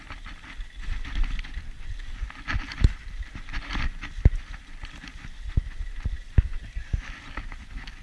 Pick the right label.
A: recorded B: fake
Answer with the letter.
A